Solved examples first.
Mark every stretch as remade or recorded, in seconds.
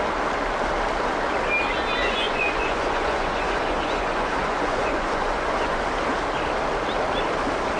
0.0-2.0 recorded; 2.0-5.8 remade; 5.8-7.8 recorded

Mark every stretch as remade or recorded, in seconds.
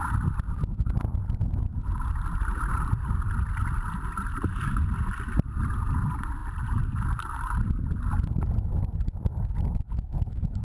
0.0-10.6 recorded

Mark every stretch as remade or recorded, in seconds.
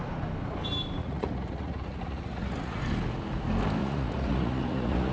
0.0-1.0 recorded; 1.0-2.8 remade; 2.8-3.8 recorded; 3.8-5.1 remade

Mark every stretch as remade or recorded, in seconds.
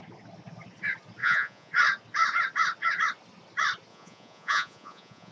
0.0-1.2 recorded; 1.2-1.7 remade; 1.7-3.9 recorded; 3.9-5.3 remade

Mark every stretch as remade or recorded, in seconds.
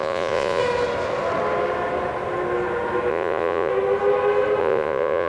0.0-0.6 remade; 0.6-3.1 recorded; 3.1-3.7 remade; 3.7-4.6 recorded; 4.6-5.3 remade